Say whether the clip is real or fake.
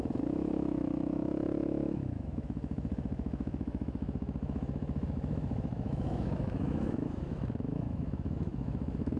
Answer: fake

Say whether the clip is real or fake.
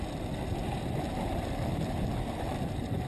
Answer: real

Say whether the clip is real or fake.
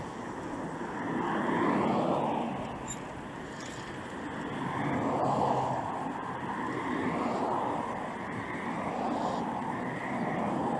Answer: real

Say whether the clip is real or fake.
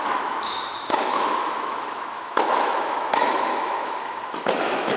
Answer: fake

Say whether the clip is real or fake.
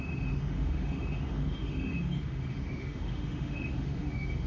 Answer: fake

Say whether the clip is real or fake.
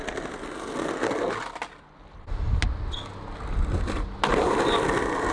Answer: real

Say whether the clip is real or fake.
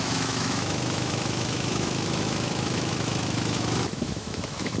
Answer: fake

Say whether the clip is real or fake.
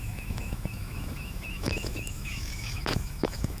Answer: fake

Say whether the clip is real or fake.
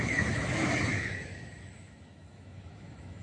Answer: fake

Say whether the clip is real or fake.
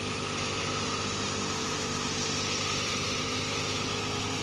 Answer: real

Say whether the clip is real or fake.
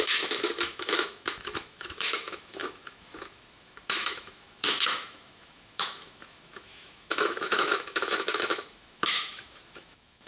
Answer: fake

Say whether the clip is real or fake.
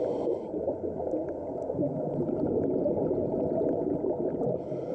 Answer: real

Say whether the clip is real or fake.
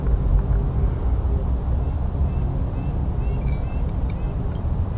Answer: real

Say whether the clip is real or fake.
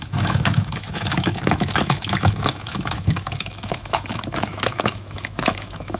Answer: fake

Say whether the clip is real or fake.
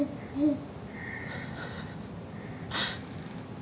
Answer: real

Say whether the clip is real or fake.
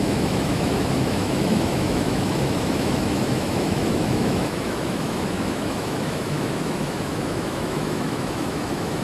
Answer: fake